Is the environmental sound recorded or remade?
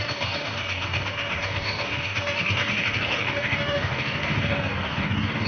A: remade